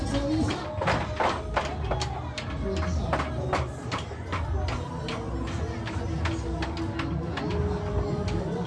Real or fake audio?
real